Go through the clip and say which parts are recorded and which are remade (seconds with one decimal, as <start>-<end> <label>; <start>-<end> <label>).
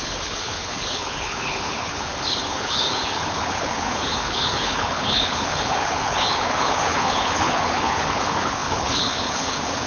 0.0-9.9 remade